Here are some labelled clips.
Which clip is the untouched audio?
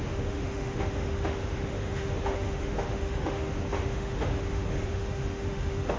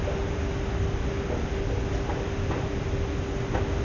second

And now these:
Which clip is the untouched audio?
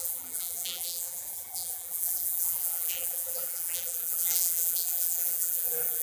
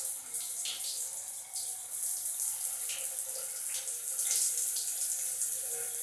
second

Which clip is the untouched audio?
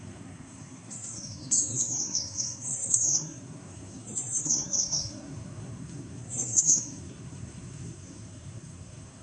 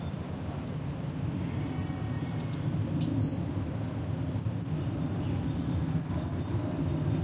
second